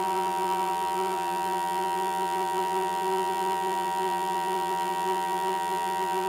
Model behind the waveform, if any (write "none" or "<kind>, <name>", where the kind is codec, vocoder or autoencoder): vocoder, BigVGAN v2